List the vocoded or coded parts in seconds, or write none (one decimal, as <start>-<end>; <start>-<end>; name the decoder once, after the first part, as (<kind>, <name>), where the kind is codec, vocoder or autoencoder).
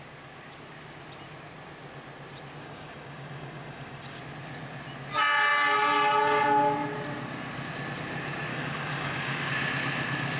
2.6-4.2 (codec, DAC); 8.5-9.5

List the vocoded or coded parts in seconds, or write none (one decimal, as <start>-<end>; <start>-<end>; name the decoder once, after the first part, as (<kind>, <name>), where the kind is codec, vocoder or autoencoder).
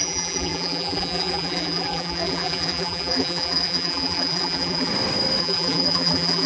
0.0-4.9 (vocoder, BigVGAN v2); 5.4-6.5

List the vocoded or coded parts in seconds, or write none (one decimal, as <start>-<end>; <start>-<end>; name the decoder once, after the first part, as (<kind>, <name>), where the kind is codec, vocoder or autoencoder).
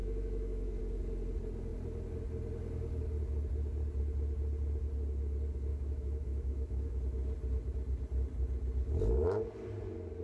0.0-0.8 (autoencoder, DAC-VAE); 5.7-7.0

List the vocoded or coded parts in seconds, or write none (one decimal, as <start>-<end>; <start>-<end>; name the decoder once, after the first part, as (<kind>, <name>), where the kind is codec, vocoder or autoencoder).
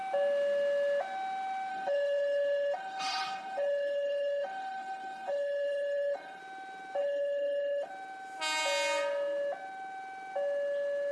1.7-6.4 (codec, HILCodec); 7.0-7.9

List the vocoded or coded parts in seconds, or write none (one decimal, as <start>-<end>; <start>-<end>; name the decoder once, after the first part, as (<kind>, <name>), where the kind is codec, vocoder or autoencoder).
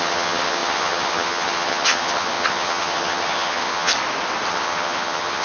0.0-3.9 (vocoder, HiFi-GAN); 4.5-5.4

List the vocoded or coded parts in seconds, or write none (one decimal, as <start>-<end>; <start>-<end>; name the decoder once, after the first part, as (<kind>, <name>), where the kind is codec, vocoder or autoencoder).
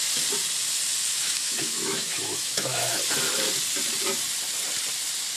1.1-3.0 (autoencoder, DAC-VAE)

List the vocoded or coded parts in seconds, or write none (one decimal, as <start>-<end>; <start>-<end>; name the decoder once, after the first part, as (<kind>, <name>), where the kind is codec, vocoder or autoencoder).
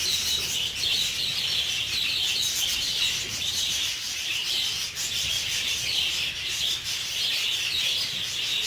3.3-4.4 (vocoder, BigVGAN v2)